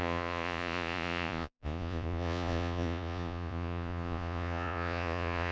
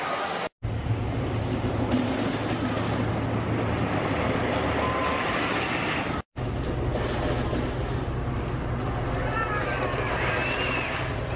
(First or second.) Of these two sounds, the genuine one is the second